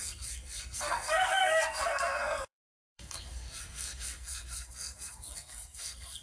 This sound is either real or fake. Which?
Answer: fake